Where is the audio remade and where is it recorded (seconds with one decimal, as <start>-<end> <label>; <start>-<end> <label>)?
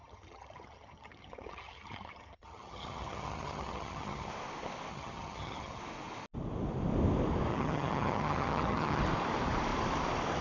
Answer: 0.0-4.3 remade; 4.3-4.9 recorded; 4.9-5.8 remade; 5.8-7.5 recorded; 7.5-9.0 remade; 9.0-10.4 recorded